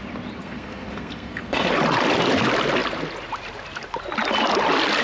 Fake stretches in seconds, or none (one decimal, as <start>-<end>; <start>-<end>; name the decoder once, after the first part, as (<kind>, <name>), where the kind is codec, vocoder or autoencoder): 0.4-1.7 (codec, SNAC)